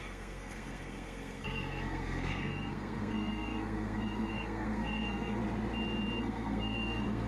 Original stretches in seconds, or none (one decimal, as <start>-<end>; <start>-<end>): 5.4-6.2